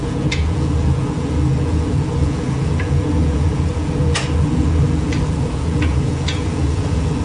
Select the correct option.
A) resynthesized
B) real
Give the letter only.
A